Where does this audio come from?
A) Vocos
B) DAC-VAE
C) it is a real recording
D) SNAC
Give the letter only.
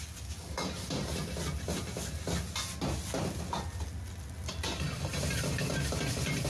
C